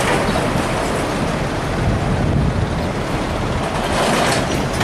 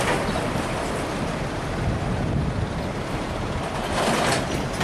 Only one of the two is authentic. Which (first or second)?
first